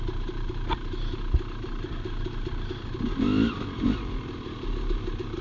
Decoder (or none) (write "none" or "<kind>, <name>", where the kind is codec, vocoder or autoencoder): none